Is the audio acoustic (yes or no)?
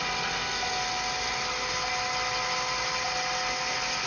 yes